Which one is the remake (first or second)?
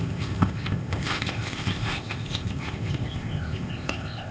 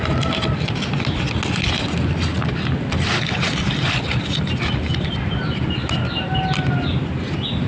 first